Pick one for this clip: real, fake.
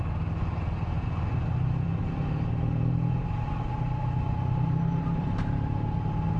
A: real